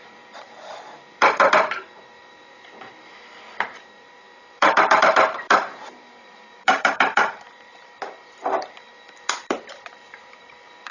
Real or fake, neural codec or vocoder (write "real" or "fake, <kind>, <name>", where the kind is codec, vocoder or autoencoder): fake, vocoder, BigVGAN v2